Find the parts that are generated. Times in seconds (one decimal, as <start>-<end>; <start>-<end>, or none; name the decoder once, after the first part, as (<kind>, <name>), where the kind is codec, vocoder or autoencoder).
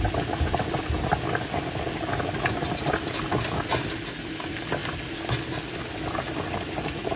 none